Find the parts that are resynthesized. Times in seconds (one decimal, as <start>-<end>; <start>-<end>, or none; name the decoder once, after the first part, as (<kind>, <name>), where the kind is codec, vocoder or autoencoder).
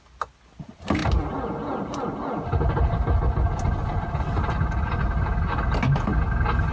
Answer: none